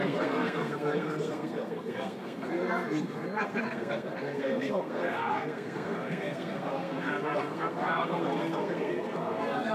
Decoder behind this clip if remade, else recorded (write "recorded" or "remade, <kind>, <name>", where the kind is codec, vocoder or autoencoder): remade, codec, SNAC